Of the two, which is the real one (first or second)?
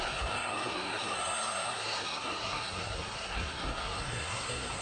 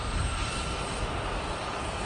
second